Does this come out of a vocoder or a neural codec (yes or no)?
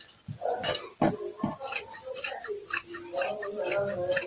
no